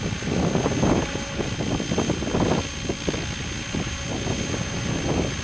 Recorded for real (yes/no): yes